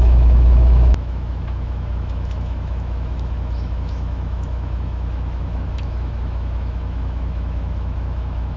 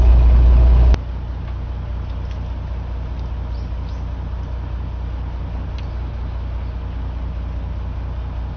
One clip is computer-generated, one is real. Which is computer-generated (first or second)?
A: first